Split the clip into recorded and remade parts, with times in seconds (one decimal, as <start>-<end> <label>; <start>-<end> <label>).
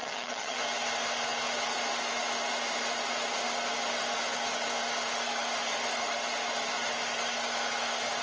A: 0.0-0.6 remade; 0.6-8.2 recorded